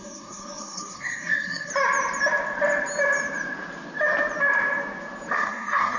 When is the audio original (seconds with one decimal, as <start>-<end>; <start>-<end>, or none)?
1.7-5.3